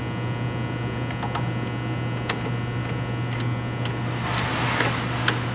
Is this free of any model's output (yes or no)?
yes